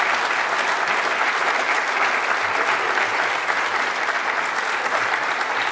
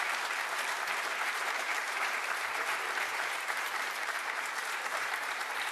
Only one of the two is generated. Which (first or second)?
second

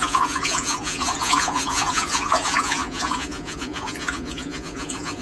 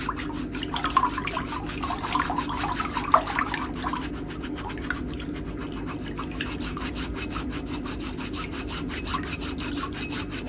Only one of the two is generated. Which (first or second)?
first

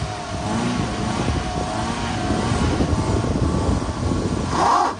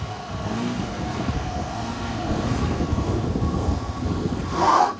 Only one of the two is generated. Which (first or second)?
second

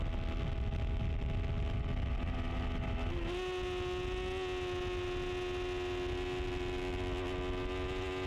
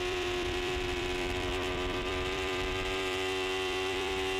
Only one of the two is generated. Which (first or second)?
second